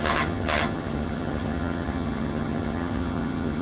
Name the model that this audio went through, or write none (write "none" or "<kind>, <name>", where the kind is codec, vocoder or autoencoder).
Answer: vocoder, HiFi-GAN